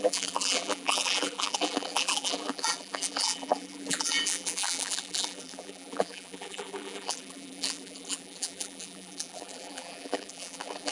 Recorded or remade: remade